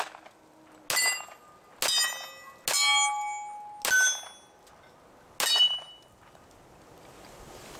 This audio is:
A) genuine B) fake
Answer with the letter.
A